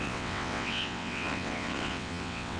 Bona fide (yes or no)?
no